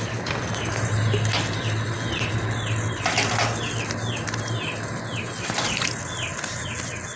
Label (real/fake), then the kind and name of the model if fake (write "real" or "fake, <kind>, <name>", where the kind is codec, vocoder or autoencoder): real